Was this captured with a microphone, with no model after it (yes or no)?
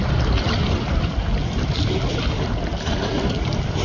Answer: yes